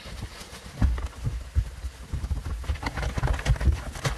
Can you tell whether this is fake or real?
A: real